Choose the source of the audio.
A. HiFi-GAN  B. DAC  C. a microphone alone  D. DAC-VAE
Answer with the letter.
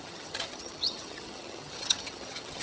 A